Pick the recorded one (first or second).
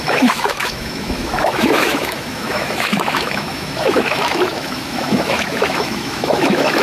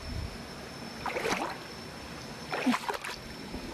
second